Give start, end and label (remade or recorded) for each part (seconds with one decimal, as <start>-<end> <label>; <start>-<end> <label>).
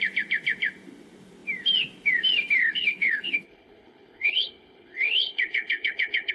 0.0-2.6 recorded; 2.6-6.3 remade